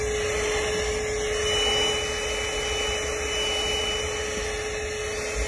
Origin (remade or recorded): recorded